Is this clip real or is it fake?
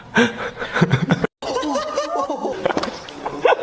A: real